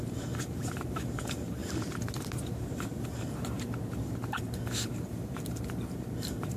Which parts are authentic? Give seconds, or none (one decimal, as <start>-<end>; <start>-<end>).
1.6-2.2